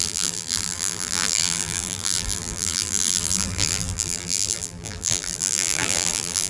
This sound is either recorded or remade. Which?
remade